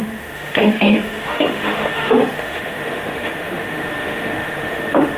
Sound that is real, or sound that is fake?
fake